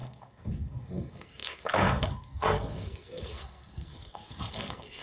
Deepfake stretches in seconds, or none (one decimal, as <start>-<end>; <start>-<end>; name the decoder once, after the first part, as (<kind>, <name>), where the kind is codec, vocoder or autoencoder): 0.0-5.0 (codec, SNAC)